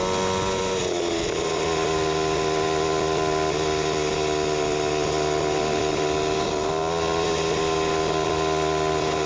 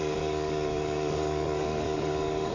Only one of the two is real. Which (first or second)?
first